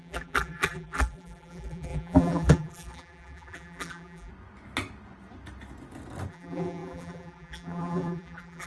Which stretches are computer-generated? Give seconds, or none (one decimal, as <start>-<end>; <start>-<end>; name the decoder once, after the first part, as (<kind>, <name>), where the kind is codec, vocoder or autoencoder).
0.0-4.3 (vocoder, BigVGAN v2); 6.3-8.7

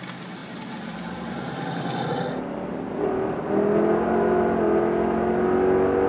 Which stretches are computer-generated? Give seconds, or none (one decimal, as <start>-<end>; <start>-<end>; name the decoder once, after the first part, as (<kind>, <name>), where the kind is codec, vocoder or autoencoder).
none

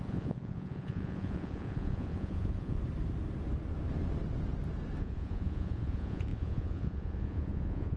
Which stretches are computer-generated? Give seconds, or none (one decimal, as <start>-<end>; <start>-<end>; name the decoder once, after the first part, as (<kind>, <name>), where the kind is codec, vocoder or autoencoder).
0.0-2.8 (vocoder, Vocos); 5.0-8.0

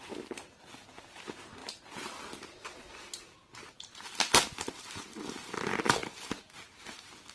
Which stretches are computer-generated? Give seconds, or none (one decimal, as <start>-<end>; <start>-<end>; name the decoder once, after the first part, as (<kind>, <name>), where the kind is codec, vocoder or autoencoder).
1.6-2.9 (vocoder, BigVGAN v2)